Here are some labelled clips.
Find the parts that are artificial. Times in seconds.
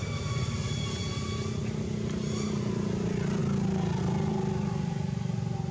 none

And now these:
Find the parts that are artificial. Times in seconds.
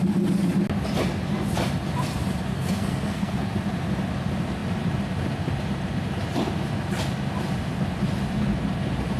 2.5-3.5 (codec, SNAC)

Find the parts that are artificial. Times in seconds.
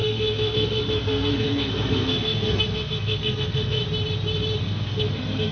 0.0-3.8 (codec, SNAC); 4.6-5.5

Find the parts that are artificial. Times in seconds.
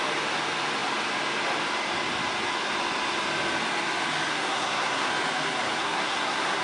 4.3-5.1 (codec, SNAC); 5.8-6.6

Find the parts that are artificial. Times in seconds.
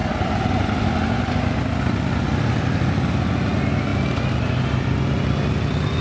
none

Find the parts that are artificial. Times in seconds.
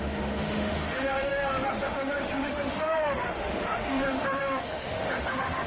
0.0-5.7 (autoencoder, DAC-VAE)